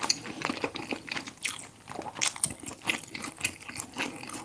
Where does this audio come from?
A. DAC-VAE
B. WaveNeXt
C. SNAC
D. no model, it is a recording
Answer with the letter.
D